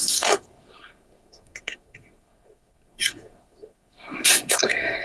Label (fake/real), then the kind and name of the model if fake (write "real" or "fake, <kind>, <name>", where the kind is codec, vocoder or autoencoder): fake, codec, SNAC